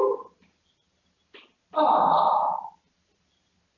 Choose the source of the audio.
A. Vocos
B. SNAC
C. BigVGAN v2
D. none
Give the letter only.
D